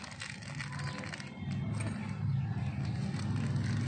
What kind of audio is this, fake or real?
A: real